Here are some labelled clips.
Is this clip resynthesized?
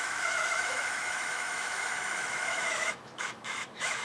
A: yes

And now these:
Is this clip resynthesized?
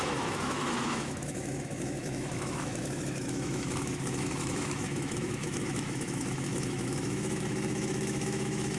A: yes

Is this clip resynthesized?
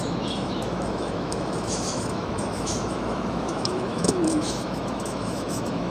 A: yes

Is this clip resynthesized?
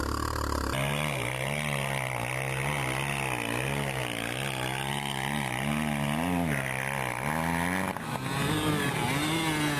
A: no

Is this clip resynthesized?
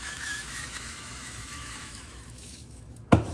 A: yes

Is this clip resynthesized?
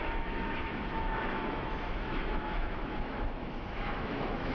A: yes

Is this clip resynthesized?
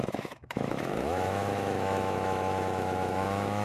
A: yes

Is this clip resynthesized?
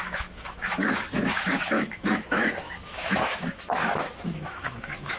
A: yes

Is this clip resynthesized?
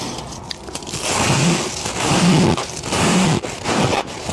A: no